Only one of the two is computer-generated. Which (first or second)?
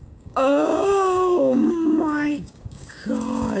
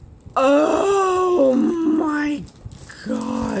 first